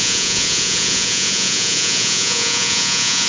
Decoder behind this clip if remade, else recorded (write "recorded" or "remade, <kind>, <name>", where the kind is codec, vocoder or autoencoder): remade, vocoder, Vocos